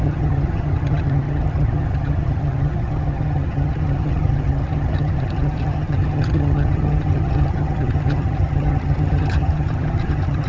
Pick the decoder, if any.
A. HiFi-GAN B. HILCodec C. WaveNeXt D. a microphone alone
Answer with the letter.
A